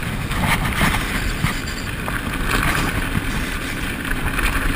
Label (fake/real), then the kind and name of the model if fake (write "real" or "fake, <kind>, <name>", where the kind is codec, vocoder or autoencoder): real